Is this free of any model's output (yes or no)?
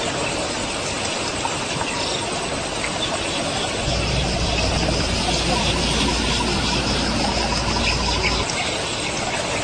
yes